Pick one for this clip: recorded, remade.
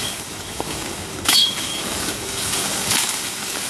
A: remade